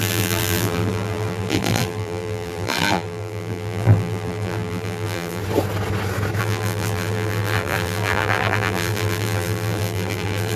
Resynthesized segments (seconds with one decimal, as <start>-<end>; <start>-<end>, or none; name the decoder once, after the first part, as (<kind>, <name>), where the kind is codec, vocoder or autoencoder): 0.0-5.4 (vocoder, BigVGAN v2); 6.4-10.6